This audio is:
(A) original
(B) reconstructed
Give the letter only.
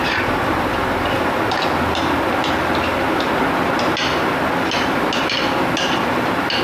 A